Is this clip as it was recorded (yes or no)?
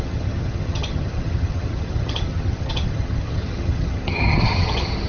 no